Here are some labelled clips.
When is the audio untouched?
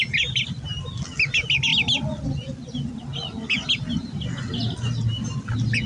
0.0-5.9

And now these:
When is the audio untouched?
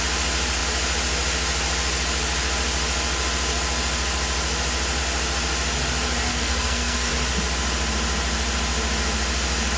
0.0-6.3; 7.1-9.8